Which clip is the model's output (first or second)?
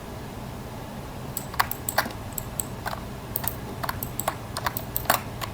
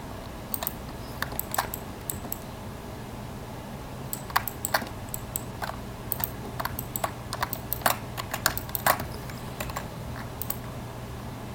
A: first